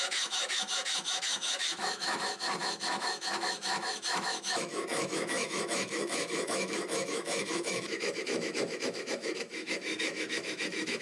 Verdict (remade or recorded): remade